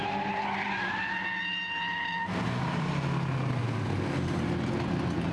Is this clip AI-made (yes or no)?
no